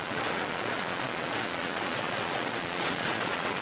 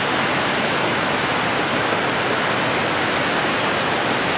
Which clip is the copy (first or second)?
first